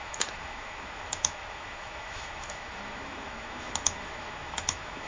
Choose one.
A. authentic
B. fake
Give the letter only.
B